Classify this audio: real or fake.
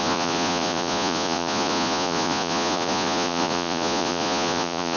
fake